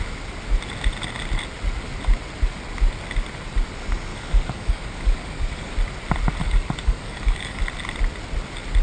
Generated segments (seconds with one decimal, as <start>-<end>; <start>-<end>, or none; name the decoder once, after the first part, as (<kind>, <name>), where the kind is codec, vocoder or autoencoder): 4.1-5.7 (codec, DAC); 6.4-7.6

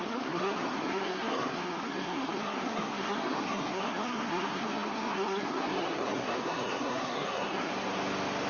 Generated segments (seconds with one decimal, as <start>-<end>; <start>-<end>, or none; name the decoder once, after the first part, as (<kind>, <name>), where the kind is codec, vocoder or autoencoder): 0.0-7.7 (codec, SNAC)